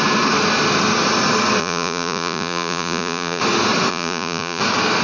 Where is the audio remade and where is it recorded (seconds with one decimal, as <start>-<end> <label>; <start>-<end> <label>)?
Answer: 0.0-1.6 recorded; 1.6-3.4 remade; 3.4-3.9 recorded; 3.9-4.6 remade; 4.6-5.0 recorded